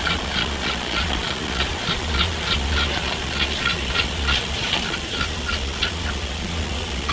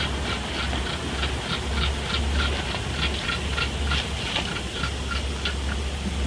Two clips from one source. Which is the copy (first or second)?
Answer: first